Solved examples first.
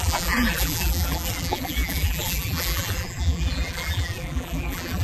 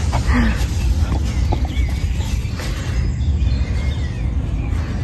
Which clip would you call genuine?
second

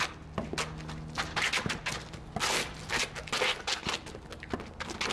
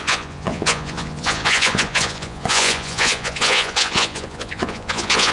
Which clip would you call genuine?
first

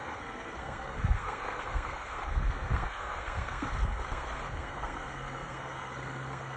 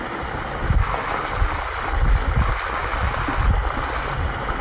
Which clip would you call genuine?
second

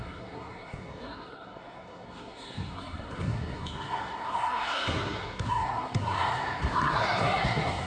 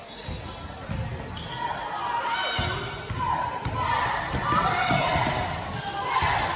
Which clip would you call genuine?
second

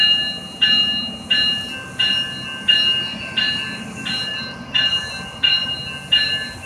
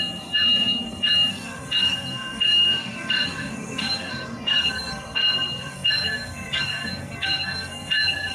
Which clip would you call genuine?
first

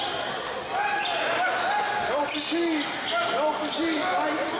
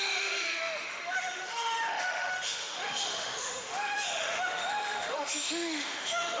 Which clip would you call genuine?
first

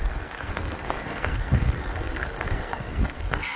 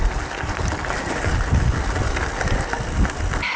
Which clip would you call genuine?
second